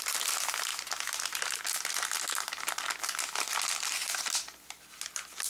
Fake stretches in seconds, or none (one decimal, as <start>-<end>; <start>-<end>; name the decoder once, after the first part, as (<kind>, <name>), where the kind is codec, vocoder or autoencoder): none